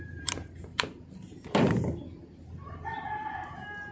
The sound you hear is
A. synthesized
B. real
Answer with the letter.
A